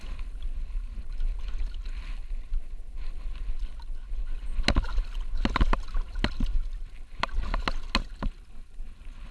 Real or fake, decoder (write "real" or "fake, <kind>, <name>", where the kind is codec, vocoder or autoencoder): real